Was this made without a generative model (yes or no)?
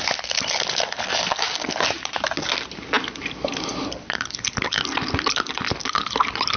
yes